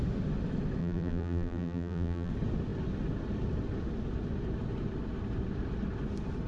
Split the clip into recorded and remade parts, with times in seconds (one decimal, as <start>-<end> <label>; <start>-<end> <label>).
0.0-0.8 recorded; 0.8-2.3 remade; 2.3-6.5 recorded